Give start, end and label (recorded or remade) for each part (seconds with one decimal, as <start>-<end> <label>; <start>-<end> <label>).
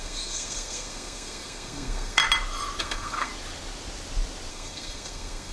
0.0-2.2 remade; 2.2-2.8 recorded; 2.8-3.3 remade; 3.3-4.5 recorded; 4.5-5.5 remade